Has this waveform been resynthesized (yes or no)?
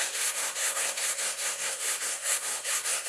yes